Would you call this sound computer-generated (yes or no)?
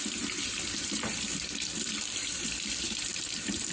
yes